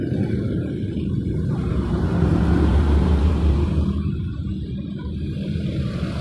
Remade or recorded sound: remade